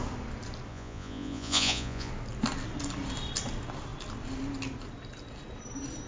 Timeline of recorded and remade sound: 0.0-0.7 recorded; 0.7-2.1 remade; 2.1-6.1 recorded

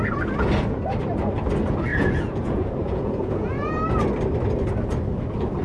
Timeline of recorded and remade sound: 0.0-1.9 recorded; 1.9-3.7 remade; 3.7-5.6 recorded